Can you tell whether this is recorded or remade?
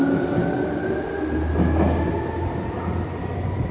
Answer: recorded